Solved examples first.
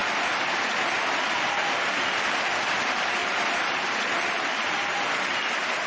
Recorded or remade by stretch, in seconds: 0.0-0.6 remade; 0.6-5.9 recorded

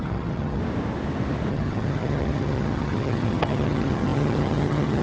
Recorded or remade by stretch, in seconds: 0.0-0.6 remade; 0.6-1.5 recorded; 1.5-5.0 remade

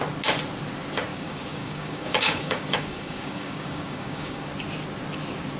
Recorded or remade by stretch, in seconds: 0.0-1.1 recorded; 1.1-4.5 remade; 4.5-5.6 recorded

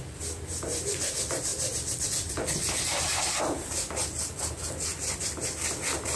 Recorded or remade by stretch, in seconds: 0.0-6.2 recorded

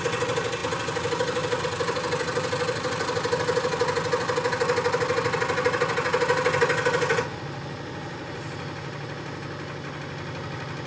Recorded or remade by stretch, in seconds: 0.0-10.9 recorded

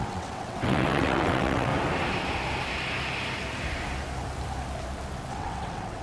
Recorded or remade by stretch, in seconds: 0.0-1.7 remade; 1.7-5.3 recorded; 5.3-6.0 remade

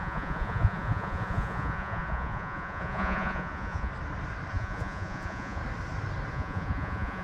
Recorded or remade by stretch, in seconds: 0.0-3.9 remade; 3.9-4.5 recorded; 4.5-5.6 remade; 5.6-6.3 recorded; 6.3-7.2 remade

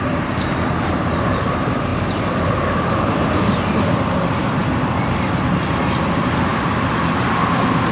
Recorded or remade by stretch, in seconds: 0.0-7.9 recorded